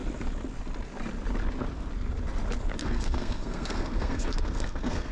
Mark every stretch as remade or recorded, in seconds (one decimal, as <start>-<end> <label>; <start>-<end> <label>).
0.0-2.8 recorded; 2.8-5.1 remade